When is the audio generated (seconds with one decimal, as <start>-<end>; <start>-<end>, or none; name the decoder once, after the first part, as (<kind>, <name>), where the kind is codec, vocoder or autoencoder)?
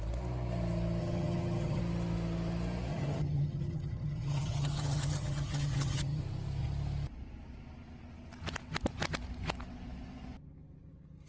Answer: 1.0-1.8 (vocoder, HiFi-GAN); 2.9-6.2